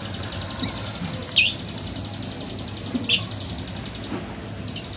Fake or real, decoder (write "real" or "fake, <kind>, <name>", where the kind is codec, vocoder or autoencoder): real